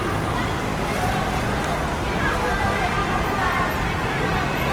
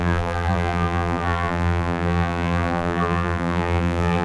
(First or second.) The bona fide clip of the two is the first